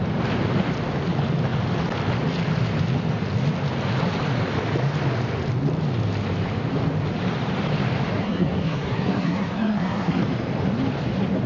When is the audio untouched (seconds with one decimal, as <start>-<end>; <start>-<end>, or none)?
0.0-8.2; 10.2-11.5